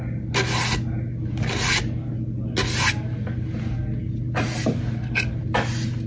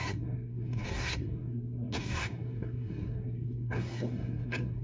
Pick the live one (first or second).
first